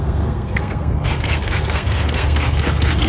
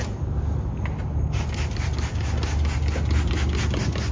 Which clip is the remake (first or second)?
first